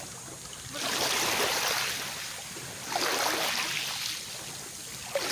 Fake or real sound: real